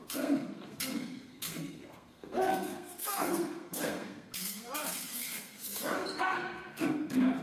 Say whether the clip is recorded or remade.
remade